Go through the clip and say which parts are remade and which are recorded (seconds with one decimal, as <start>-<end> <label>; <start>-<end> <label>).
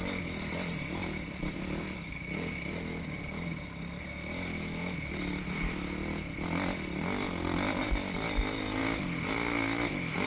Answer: 0.0-4.5 recorded; 4.5-5.1 remade; 5.1-10.3 recorded